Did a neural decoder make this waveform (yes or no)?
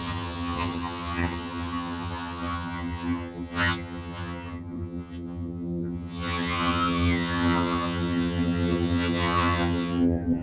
yes